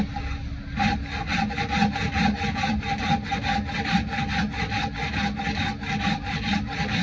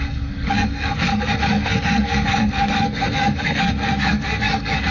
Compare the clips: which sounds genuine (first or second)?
first